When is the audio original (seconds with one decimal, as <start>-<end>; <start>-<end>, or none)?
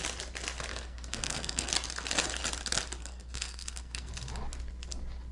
0.0-0.7; 1.7-3.0; 4.1-5.3